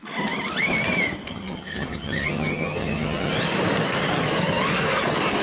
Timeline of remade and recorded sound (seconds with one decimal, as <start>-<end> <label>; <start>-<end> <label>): 0.0-1.3 recorded; 1.3-3.3 remade; 3.3-5.4 recorded